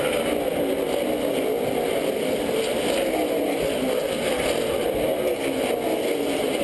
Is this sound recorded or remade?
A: recorded